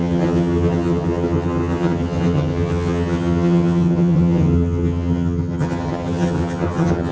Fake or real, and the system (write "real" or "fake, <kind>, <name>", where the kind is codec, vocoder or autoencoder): fake, vocoder, HiFi-GAN